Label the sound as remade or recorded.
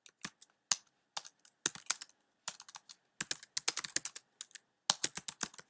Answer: recorded